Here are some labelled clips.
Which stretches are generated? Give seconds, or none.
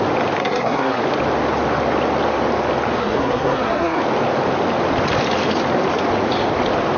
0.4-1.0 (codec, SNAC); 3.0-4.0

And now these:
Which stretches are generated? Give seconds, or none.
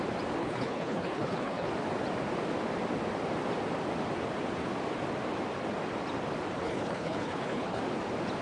0.4-1.7 (codec, HILCodec); 6.6-7.8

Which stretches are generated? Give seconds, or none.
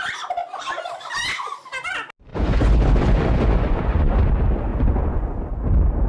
2.3-4.3 (vocoder, Vocos); 4.7-5.4